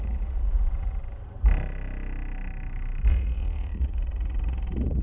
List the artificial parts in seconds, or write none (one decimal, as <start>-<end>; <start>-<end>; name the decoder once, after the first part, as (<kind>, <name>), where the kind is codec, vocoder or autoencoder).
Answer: 0.0-1.0 (vocoder, Vocos); 3.1-5.0